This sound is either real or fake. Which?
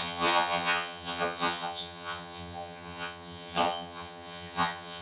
fake